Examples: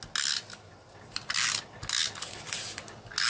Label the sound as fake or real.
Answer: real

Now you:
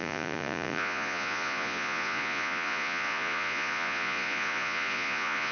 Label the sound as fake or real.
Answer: fake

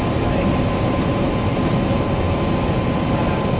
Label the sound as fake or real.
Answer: real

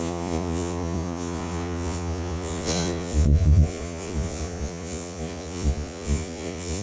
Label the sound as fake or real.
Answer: fake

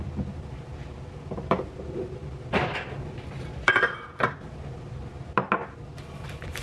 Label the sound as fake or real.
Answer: real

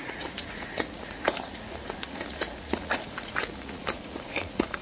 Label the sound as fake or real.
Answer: fake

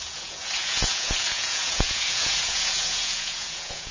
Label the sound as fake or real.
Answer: fake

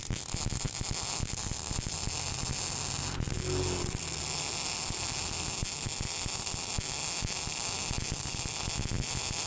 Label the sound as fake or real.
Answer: real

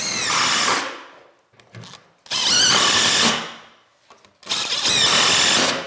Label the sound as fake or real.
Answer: real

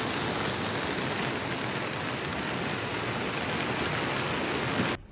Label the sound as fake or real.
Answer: real